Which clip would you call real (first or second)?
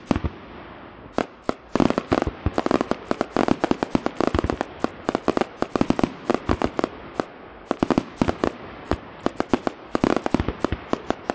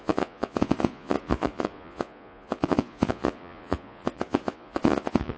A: first